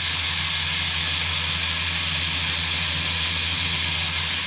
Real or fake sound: real